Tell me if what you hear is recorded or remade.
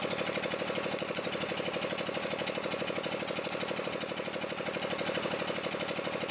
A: recorded